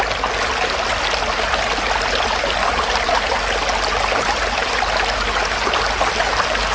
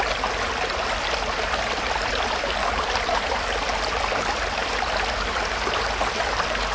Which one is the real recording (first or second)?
first